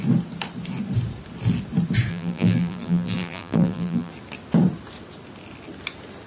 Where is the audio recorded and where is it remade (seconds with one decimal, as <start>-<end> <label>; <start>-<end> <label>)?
0.0-2.1 recorded; 2.1-4.1 remade; 4.1-6.3 recorded